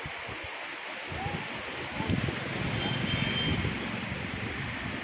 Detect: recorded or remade recorded